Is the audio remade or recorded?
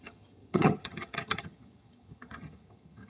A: remade